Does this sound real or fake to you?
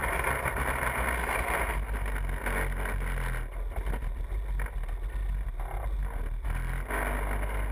real